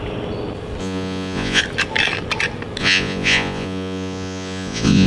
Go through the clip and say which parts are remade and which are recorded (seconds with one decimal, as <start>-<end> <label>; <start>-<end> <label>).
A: 0.0-0.8 recorded; 0.8-1.6 remade; 1.6-2.8 recorded; 2.8-5.1 remade